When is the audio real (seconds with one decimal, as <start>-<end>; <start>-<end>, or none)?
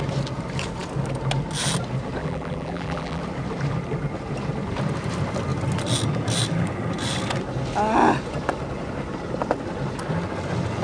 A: 0.0-2.2; 3.2-10.8